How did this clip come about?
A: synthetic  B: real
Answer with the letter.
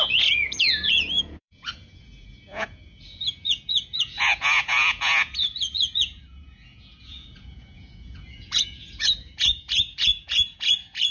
A